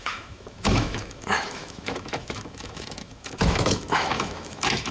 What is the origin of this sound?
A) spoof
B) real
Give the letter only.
A